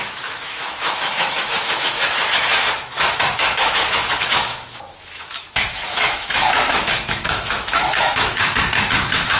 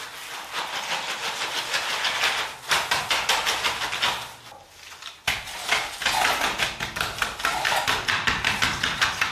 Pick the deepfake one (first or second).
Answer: first